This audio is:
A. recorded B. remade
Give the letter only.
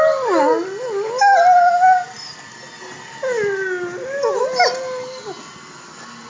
A